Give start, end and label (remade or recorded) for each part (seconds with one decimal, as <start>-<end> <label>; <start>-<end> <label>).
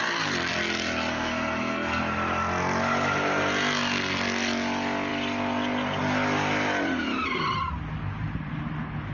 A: 0.0-1.1 recorded; 1.1-2.0 remade; 2.0-9.1 recorded